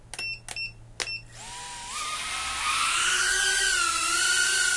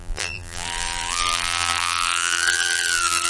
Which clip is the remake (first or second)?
second